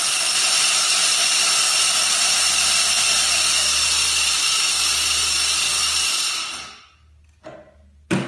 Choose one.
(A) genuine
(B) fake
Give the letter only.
A